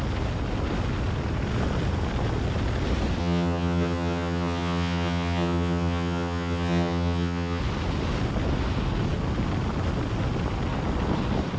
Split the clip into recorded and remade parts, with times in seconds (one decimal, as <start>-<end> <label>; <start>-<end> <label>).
0.0-3.2 recorded; 3.2-7.6 remade; 7.6-11.6 recorded